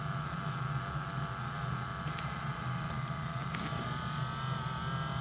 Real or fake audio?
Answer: real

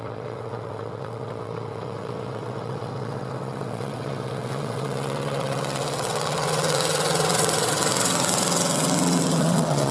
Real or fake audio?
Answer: fake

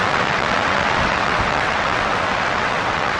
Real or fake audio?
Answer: fake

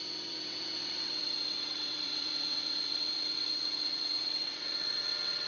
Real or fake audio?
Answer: fake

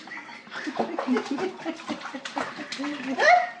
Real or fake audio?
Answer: real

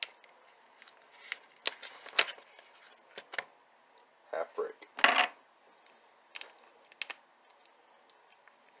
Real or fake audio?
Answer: real